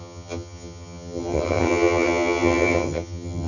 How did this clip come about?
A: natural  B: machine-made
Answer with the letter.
B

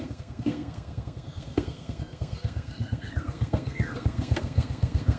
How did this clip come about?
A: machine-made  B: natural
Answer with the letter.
A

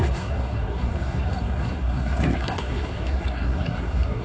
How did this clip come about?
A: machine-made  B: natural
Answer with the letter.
A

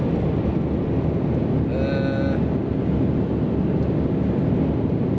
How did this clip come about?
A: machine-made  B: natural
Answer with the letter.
B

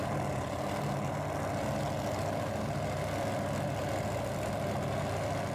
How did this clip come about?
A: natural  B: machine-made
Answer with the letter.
A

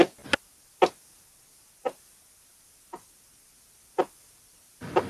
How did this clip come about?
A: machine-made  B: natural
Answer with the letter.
B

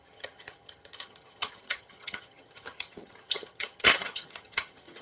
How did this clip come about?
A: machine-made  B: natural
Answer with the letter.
A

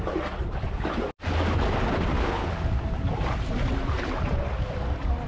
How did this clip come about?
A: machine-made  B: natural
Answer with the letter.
B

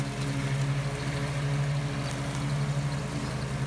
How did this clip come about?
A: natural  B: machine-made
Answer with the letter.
A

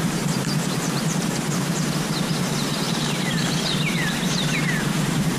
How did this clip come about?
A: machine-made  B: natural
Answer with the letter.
A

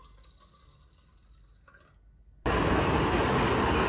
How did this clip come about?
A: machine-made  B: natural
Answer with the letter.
B